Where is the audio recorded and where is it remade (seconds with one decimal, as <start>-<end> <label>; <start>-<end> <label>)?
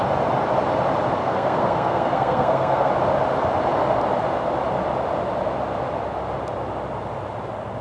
0.0-1.2 recorded; 1.2-2.9 remade; 2.9-7.8 recorded